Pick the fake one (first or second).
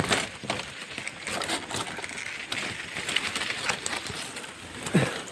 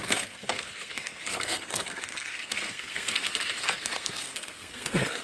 second